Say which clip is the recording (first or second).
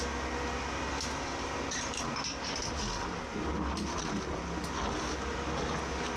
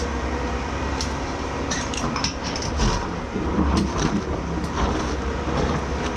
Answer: first